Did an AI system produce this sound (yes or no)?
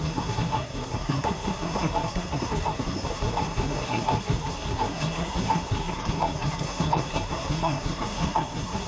yes